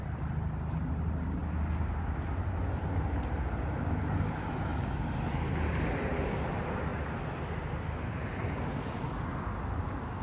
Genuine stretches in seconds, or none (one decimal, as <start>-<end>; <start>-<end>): 0.0-10.2